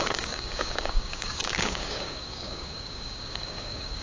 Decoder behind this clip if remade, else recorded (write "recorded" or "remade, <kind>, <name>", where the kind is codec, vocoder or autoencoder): remade, codec, DAC